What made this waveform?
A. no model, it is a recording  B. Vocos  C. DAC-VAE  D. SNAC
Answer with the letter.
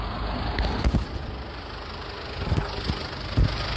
A